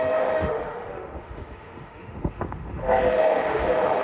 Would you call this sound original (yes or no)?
no